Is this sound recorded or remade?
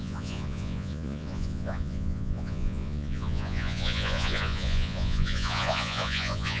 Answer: remade